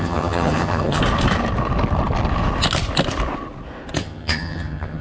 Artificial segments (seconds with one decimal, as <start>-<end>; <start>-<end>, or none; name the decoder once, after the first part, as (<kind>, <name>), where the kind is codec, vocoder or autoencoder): 0.0-1.0 (vocoder, HiFi-GAN); 4.0-5.0